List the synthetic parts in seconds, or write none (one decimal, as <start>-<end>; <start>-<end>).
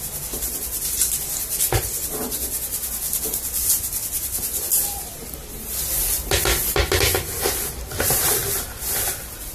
none